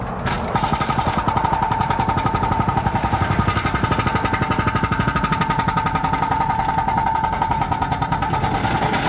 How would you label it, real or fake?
real